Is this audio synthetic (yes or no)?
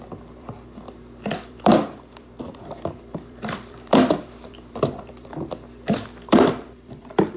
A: yes